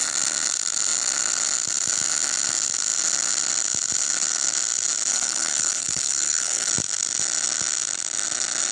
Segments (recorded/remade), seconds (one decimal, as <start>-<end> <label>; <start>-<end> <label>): 0.0-5.1 recorded; 5.1-6.7 remade; 6.7-8.7 recorded